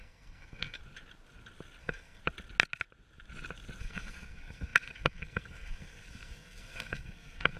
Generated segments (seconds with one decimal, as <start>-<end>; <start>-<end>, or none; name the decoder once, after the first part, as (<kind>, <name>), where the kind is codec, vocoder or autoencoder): 0.0-0.8 (codec, SNAC); 1.8-2.2; 3.8-7.6

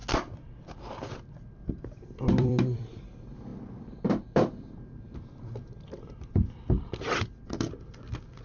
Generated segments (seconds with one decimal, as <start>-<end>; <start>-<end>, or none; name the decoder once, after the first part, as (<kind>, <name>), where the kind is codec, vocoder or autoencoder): 0.0-3.0 (vocoder, BigVGAN v2); 3.5-8.4